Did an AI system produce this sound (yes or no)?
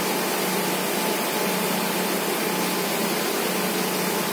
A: no